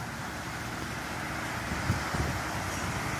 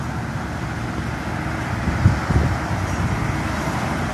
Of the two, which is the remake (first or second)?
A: first